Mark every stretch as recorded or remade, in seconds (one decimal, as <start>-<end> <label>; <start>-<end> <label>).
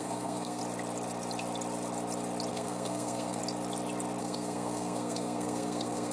0.0-0.6 remade; 0.6-2.5 recorded; 2.5-3.4 remade; 3.4-4.2 recorded; 4.2-6.1 remade